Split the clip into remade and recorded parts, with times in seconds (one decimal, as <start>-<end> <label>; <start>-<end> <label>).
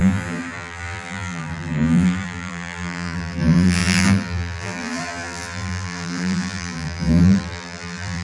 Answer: 0.0-8.2 remade